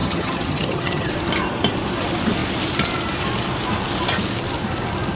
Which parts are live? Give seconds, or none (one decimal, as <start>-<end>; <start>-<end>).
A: 1.1-5.2